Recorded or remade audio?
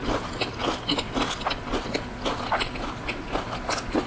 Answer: recorded